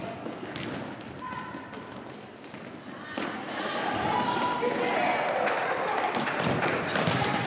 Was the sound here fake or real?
real